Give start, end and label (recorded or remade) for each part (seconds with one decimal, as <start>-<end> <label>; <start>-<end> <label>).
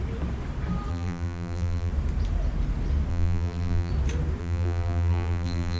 0.0-0.9 recorded; 0.9-1.9 remade; 1.9-3.1 recorded; 3.1-3.9 remade; 3.9-4.4 recorded; 4.4-5.8 remade